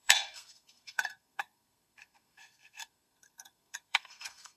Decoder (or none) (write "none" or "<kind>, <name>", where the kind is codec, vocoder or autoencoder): codec, SNAC